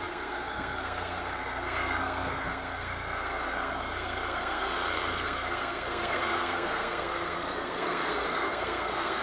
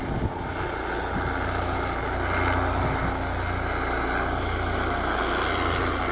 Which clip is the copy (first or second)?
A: first